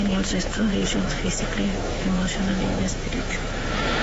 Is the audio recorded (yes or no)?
no